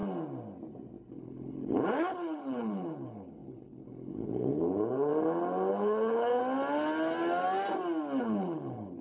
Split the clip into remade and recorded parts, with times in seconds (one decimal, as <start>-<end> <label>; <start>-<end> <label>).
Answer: 0.0-1.1 recorded; 1.1-5.1 remade; 5.1-5.7 recorded; 5.7-6.4 remade; 6.4-8.2 recorded; 8.2-9.0 remade